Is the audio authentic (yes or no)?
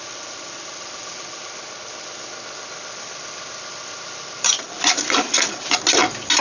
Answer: yes